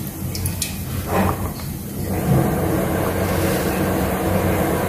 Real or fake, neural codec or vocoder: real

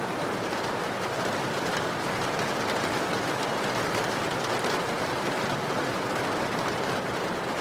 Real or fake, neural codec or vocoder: fake, vocoder, BigVGAN v2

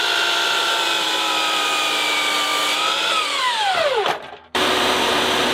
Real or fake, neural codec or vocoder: fake, vocoder, BigVGAN v2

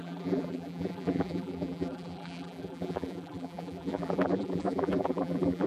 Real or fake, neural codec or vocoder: fake, vocoder, BigVGAN v2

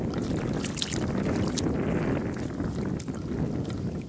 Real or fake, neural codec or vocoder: real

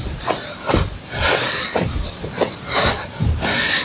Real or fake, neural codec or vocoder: fake, vocoder, BigVGAN v2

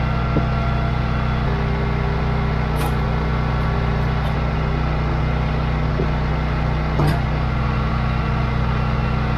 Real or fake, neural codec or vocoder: real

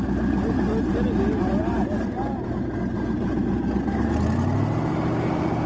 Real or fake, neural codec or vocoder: real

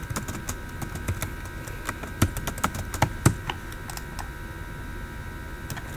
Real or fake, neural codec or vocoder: real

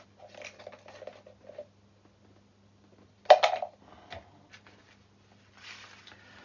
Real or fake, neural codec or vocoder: real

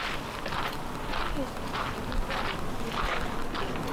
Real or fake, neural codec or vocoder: real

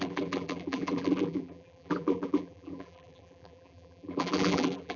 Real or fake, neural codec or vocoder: fake, vocoder, BigVGAN v2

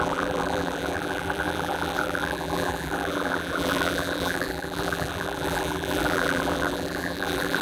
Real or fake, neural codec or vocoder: fake, vocoder, BigVGAN v2